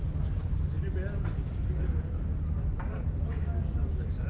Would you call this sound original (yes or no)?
yes